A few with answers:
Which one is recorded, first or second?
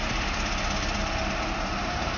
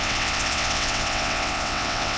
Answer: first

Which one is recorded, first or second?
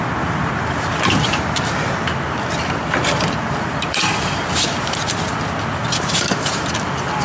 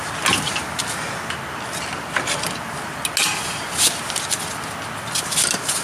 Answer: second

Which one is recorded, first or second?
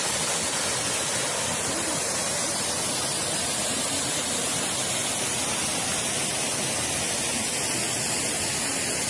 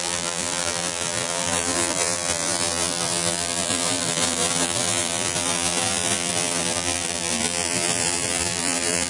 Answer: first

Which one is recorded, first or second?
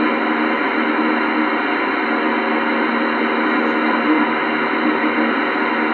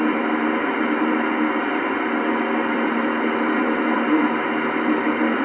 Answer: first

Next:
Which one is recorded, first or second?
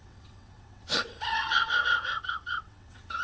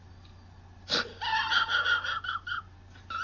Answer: second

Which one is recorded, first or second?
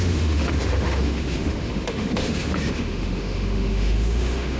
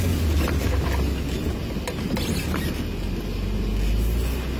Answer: second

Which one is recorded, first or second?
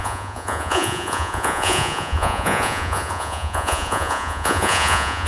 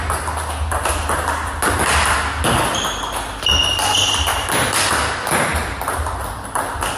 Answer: second